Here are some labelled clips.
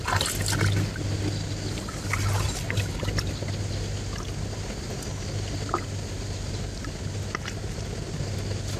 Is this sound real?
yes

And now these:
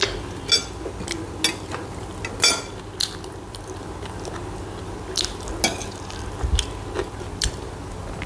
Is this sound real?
yes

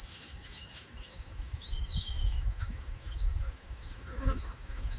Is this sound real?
no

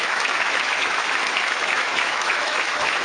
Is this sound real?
no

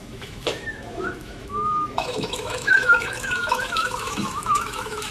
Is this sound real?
no